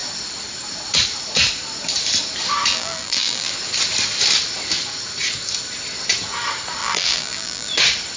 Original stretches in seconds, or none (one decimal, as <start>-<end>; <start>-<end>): 0.0-2.7; 3.5-6.8; 7.7-8.2